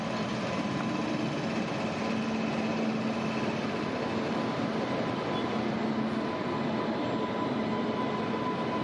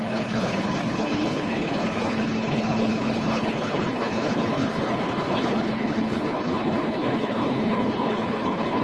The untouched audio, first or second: first